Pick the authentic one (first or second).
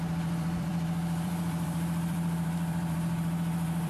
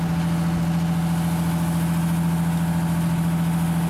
second